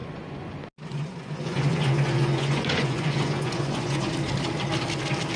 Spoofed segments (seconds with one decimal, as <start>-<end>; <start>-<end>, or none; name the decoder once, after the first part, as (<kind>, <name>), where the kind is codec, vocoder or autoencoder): 0.0-0.5 (vocoder, Vocos); 0.9-4.1